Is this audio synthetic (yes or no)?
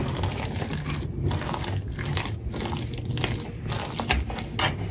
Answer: no